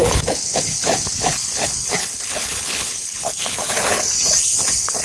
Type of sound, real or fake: fake